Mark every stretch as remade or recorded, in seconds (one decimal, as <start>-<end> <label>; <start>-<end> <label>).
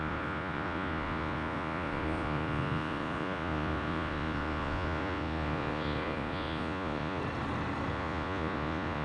0.0-7.2 remade; 7.2-7.9 recorded; 7.9-9.0 remade